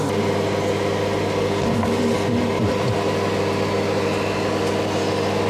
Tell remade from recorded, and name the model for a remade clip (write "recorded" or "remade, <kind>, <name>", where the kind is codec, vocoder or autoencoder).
recorded